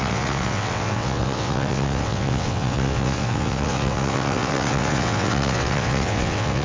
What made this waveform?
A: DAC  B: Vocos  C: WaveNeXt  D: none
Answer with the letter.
C